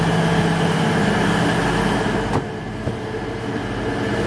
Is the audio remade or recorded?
recorded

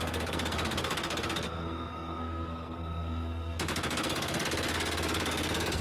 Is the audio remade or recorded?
remade